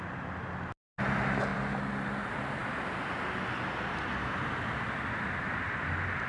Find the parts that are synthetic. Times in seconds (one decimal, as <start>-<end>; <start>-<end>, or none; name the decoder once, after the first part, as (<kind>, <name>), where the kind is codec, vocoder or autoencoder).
none